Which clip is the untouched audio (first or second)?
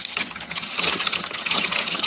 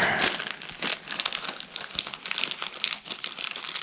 second